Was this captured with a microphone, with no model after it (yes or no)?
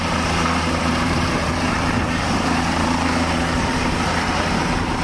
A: no